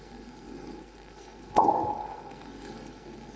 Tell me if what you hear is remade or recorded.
remade